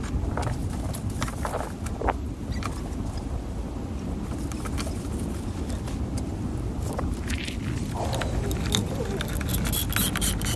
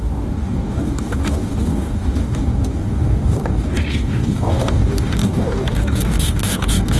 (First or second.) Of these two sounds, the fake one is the second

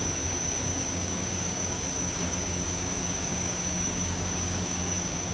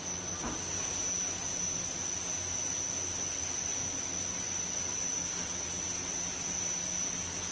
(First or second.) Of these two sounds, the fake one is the first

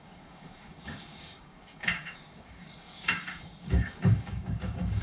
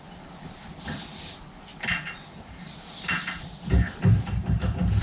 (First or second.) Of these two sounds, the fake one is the first